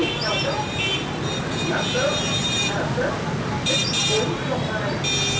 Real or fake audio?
real